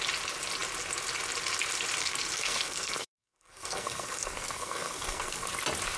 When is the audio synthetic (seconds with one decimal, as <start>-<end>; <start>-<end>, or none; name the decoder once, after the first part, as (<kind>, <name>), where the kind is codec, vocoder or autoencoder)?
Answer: 2.0-5.5 (codec, SNAC)